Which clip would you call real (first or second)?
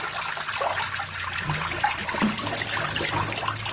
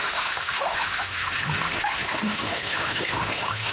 first